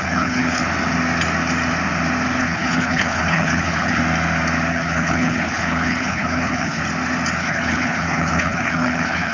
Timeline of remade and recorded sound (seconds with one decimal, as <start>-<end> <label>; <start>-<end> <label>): 0.0-0.6 remade; 0.6-2.4 recorded; 2.4-4.0 remade; 4.0-4.7 recorded; 4.7-6.8 remade; 6.8-7.4 recorded; 7.4-9.3 remade